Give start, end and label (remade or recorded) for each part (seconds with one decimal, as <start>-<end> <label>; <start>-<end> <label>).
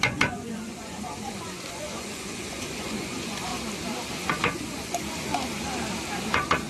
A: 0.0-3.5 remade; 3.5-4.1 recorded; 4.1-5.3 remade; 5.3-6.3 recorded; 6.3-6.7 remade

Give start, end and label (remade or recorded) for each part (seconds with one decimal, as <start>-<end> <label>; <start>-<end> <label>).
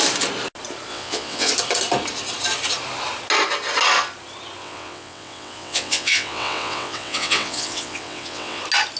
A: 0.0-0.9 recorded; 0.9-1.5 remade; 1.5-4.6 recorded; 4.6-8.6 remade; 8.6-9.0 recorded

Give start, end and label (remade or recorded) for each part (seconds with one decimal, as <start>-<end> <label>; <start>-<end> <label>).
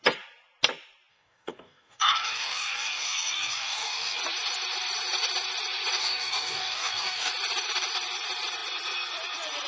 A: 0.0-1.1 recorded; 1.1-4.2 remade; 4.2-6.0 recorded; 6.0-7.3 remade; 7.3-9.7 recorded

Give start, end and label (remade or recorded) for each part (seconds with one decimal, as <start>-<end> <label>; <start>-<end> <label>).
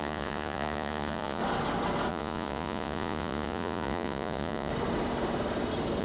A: 0.0-1.4 remade; 1.4-2.1 recorded; 2.1-4.7 remade; 4.7-6.0 recorded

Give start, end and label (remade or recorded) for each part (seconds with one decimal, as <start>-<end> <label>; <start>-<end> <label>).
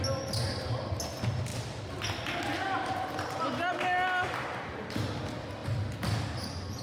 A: 0.0-6.8 recorded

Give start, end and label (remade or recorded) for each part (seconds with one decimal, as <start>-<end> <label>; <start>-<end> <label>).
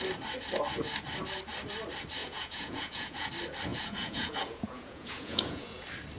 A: 0.0-2.2 recorded; 2.2-3.3 remade; 3.3-3.7 recorded; 3.7-5.8 remade; 5.8-6.2 recorded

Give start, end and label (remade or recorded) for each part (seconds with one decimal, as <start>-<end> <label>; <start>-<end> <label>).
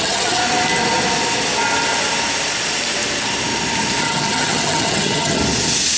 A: 0.0-0.4 remade; 0.4-4.0 recorded; 4.0-5.4 remade; 5.4-6.0 recorded